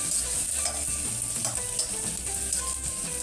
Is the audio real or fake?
real